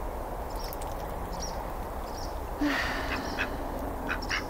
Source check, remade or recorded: recorded